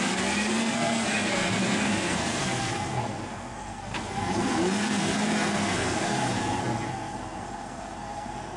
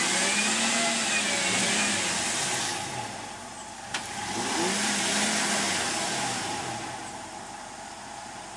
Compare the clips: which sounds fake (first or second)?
first